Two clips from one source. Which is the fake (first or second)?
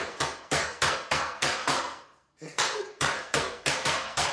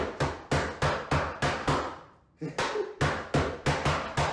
first